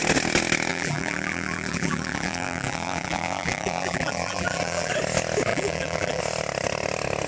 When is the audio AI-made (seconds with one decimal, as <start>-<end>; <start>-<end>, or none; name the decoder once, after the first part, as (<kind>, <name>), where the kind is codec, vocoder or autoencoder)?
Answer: 0.7-4.9 (vocoder, BigVGAN v2); 5.5-6.2